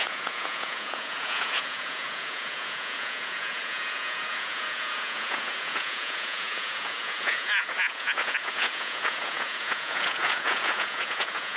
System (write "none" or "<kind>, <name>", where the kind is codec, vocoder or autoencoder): vocoder, Vocos